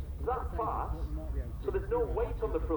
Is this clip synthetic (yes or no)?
no